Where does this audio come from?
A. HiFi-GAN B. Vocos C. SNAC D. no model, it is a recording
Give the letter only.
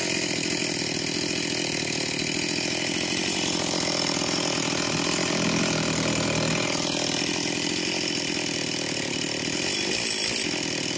D